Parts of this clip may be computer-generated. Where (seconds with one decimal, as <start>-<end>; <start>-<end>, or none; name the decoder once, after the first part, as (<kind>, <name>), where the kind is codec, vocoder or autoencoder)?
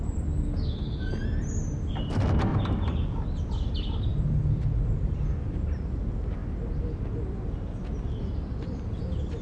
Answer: 1.2-2.0 (vocoder, BigVGAN v2); 2.5-3.4; 4.1-5.6